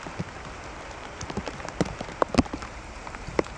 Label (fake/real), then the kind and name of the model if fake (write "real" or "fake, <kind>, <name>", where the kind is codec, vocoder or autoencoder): fake, vocoder, BigVGAN v2